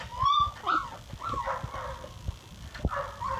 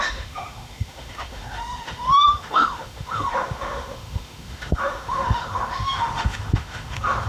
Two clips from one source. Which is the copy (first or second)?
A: second